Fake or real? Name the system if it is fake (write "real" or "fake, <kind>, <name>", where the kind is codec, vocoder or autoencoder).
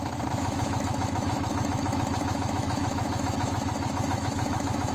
fake, autoencoder, DAC-VAE